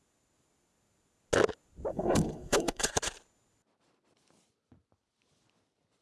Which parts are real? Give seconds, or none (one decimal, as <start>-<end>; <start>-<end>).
0.0-1.9; 2.9-6.0